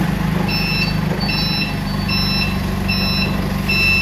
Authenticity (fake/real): real